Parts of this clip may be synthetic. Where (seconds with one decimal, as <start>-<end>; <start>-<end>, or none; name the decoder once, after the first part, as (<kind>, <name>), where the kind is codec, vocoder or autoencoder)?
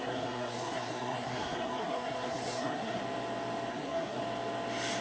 0.0-3.0 (codec, SNAC); 3.7-4.2